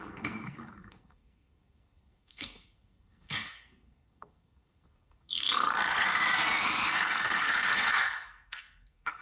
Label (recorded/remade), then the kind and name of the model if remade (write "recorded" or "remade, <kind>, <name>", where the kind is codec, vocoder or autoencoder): remade, codec, SNAC